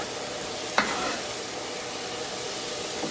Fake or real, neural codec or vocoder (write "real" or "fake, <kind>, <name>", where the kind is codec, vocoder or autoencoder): real